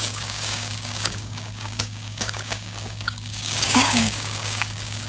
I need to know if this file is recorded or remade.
remade